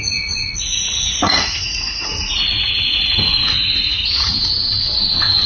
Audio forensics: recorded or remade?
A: remade